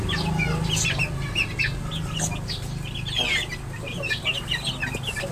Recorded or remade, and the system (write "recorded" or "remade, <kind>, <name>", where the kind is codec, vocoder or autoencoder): recorded